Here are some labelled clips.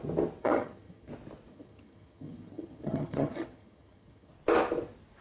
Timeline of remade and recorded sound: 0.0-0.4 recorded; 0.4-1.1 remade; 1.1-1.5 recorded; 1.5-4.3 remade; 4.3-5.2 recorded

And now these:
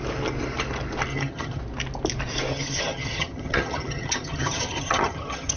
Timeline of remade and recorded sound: 0.0-1.1 recorded; 1.1-1.6 remade; 1.6-2.5 recorded; 2.5-5.6 remade

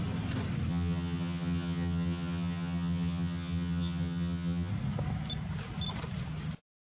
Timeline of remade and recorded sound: 0.0-0.7 recorded; 0.7-4.7 remade; 4.7-6.8 recorded

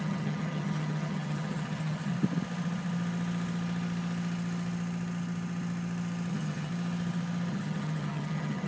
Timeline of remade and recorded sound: 0.0-2.1 remade; 2.1-6.3 recorded; 6.3-6.7 remade; 6.7-7.5 recorded; 7.5-8.7 remade